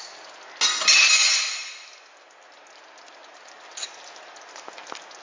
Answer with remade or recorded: recorded